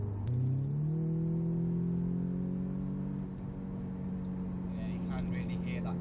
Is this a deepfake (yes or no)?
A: no